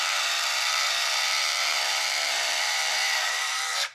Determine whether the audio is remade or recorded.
remade